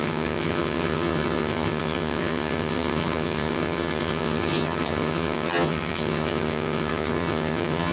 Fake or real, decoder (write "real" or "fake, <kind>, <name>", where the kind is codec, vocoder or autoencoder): fake, vocoder, HiFi-GAN